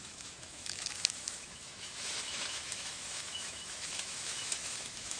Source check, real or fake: fake